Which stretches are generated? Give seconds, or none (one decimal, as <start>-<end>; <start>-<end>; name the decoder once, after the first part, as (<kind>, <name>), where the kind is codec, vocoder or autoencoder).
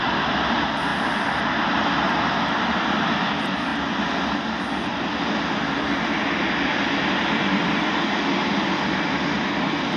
0.0-3.7 (vocoder, BigVGAN v2); 7.7-10.0